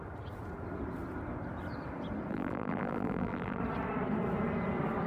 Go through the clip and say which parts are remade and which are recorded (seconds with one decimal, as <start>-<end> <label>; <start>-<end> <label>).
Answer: 0.0-2.3 recorded; 2.3-3.6 remade; 3.6-5.1 recorded